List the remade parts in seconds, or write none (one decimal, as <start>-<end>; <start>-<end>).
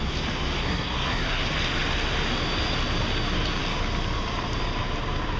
0.6-1.4